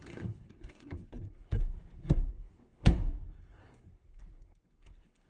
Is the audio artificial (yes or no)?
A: yes